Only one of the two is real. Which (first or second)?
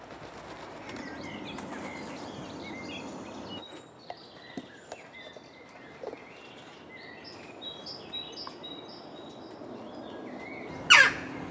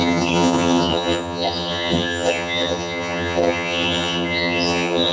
first